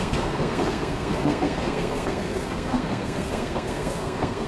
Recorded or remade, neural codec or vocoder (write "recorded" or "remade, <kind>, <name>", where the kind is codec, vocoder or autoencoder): remade, codec, SNAC